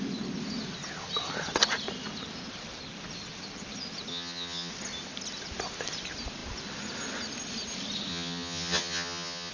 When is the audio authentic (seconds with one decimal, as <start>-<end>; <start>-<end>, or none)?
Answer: 0.0-4.1; 4.7-8.1